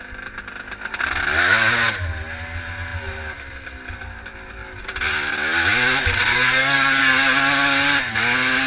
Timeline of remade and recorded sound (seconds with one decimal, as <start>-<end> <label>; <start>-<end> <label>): 0.0-6.3 recorded; 6.3-7.0 remade; 7.0-8.7 recorded